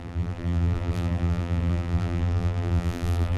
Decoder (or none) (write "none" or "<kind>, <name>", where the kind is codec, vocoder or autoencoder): vocoder, BigVGAN v2